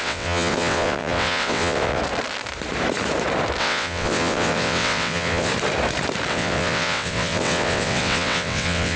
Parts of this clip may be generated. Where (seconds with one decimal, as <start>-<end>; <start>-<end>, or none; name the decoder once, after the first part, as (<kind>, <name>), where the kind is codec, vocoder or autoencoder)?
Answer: 0.0-2.0 (vocoder, WaveNeXt); 3.6-5.5; 6.3-9.0